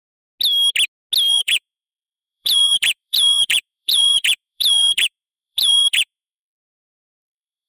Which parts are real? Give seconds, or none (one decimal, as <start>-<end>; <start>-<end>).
0.0-1.3